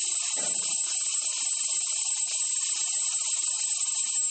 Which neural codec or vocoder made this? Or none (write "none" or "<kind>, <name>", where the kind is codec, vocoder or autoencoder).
none